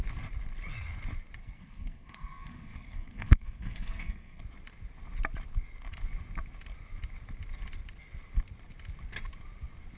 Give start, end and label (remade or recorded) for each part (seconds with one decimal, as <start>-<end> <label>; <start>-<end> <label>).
0.0-1.4 recorded; 1.4-4.4 remade; 4.4-10.0 recorded